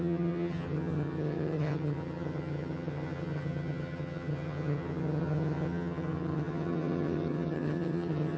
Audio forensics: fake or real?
fake